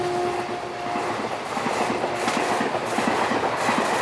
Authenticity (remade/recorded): recorded